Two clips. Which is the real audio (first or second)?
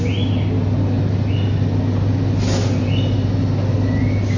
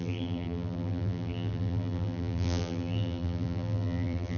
first